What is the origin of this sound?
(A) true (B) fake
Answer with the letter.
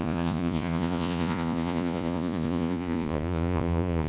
B